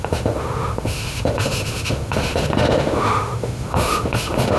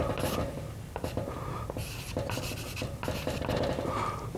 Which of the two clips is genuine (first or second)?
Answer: second